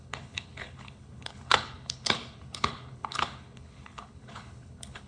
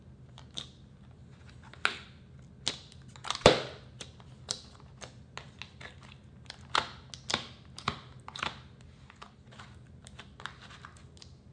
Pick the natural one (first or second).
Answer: second